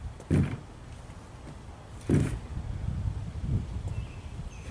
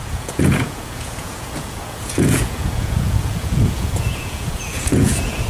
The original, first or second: first